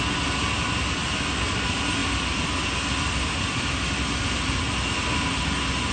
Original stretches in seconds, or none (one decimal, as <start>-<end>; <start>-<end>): 0.0-5.9